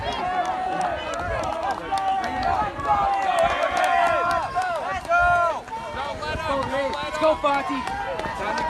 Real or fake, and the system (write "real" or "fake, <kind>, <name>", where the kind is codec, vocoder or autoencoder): real